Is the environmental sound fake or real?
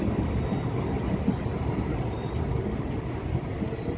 real